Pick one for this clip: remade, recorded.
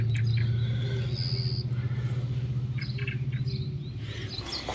recorded